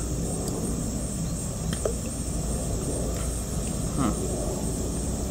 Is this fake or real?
real